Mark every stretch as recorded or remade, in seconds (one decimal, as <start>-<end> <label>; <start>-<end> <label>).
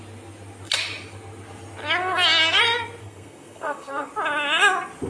0.0-2.0 recorded; 2.0-2.6 remade; 2.6-3.0 recorded; 3.0-4.1 remade; 4.1-5.1 recorded